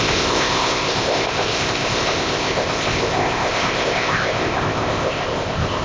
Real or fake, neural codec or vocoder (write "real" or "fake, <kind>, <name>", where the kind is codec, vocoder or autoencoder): fake, codec, ZipCodec